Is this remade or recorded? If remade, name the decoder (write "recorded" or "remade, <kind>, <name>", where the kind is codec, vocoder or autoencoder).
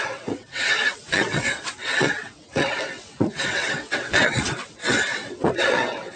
remade, vocoder, WaveNeXt